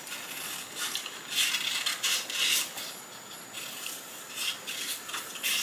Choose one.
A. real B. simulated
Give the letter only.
A